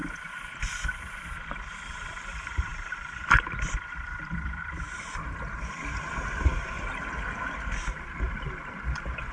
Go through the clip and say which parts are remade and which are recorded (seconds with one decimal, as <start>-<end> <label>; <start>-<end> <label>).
0.0-9.3 remade